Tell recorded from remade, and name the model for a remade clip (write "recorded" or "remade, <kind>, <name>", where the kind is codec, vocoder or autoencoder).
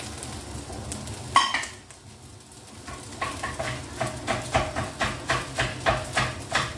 recorded